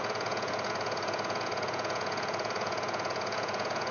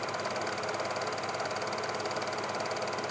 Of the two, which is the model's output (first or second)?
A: first